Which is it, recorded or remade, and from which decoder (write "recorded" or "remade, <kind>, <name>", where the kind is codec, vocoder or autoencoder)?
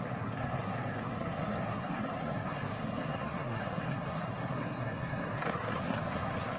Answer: remade, codec, SNAC